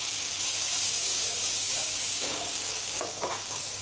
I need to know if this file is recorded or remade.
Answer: remade